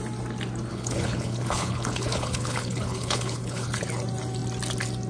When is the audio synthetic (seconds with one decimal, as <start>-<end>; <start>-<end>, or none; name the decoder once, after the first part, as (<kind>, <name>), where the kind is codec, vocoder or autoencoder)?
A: 0.7-3.8 (codec, HILCodec)